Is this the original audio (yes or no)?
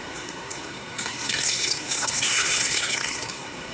no